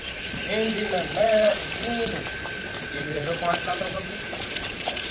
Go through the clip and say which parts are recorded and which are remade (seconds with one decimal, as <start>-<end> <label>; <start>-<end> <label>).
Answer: 0.0-0.4 remade; 0.4-1.2 recorded; 1.2-1.6 remade; 1.6-2.8 recorded; 2.8-5.1 remade